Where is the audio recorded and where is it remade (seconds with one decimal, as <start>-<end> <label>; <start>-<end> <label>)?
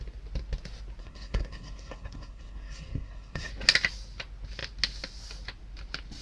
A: 0.0-1.0 recorded; 1.0-3.5 remade; 3.5-6.2 recorded